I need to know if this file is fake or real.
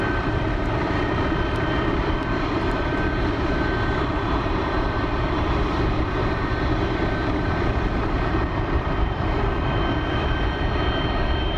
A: fake